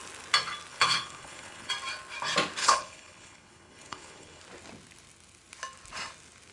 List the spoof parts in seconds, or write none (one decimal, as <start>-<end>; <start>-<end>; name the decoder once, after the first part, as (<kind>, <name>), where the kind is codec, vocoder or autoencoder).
0.7-1.7 (codec, HILCodec); 2.6-4.4